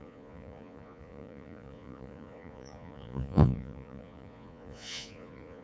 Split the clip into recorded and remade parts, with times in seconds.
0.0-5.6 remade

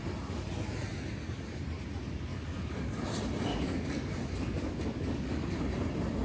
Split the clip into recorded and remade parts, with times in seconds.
0.0-2.3 recorded; 2.3-3.0 remade; 3.0-3.5 recorded; 3.5-5.6 remade; 5.6-6.2 recorded